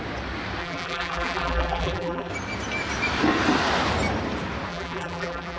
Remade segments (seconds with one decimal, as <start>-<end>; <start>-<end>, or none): 0.6-2.3; 4.7-5.6